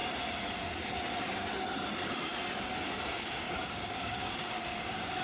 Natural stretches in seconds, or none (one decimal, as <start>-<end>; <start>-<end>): 0.0-3.1